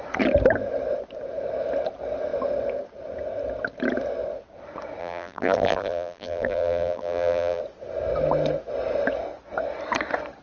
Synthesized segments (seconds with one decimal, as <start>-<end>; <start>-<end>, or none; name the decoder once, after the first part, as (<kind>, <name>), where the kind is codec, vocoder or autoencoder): 5.0-7.6 (vocoder, BigVGAN v2)